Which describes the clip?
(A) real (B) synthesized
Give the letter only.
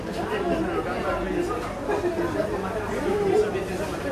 A